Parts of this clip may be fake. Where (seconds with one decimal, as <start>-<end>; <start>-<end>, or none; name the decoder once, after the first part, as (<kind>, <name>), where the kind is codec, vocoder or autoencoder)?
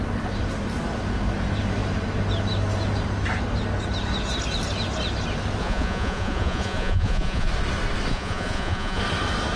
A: 5.6-7.5 (vocoder, Vocos); 8.1-9.0